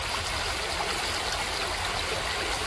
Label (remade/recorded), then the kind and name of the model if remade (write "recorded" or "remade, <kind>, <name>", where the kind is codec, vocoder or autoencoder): recorded